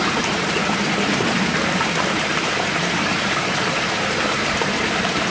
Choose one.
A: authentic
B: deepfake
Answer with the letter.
B